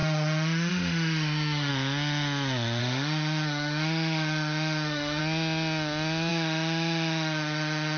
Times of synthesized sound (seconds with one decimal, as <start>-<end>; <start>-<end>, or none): 0.0-1.7; 2.8-5.2; 6.3-8.0